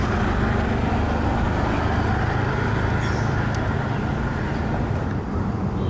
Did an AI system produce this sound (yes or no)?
no